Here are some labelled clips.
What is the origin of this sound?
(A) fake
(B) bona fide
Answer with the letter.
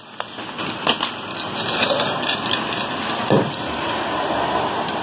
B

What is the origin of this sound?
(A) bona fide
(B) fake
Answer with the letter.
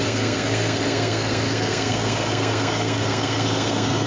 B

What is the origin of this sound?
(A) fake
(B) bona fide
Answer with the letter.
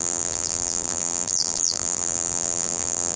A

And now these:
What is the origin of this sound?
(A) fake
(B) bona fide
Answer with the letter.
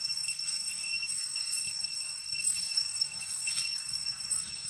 A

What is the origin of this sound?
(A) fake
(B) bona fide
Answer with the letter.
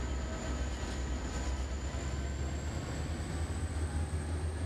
B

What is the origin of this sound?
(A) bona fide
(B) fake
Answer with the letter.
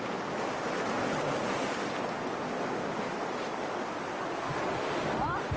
B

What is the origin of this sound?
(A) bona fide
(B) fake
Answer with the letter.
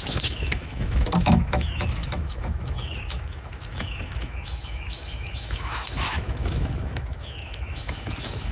B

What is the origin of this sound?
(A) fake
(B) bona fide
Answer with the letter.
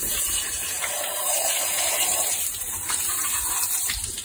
A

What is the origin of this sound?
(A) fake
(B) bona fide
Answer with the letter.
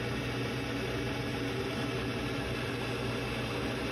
B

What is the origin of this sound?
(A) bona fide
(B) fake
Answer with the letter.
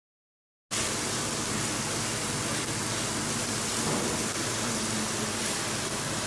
A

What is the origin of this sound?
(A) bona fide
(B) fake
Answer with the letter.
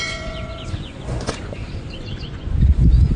B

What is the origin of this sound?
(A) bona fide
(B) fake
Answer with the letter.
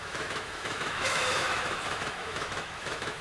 B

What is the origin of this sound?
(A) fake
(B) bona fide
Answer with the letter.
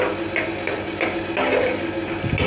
B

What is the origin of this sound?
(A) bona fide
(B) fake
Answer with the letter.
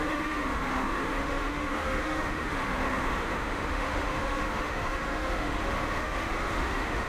B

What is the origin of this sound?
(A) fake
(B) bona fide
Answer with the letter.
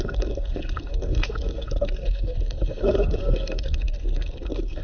A